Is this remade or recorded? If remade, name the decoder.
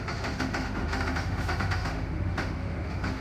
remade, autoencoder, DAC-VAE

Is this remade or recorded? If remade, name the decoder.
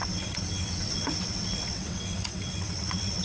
remade, vocoder, WaveNeXt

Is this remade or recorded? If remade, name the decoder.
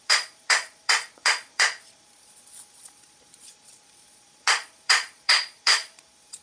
remade, vocoder, Vocos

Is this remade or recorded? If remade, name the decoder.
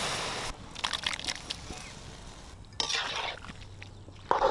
recorded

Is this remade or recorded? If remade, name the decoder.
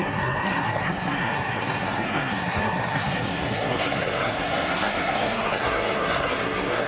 remade, codec, SNAC